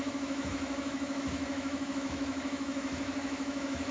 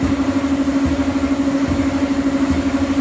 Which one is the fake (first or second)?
first